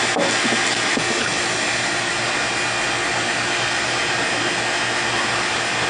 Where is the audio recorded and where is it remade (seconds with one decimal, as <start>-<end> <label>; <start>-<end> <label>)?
0.0-5.9 recorded